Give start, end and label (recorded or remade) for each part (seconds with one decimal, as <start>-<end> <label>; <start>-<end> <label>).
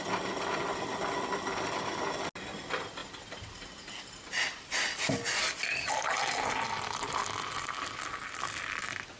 0.0-9.2 recorded